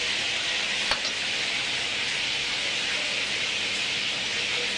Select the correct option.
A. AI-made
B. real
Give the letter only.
B